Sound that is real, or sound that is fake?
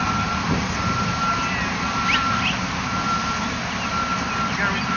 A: real